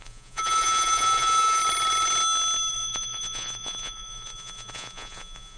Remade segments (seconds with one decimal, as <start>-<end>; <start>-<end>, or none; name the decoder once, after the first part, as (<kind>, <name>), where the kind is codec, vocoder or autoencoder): 0.0-1.6 (vocoder, Vocos); 2.7-5.6